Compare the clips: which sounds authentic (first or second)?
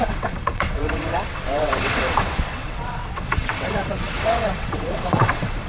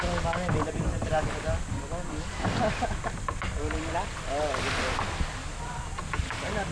second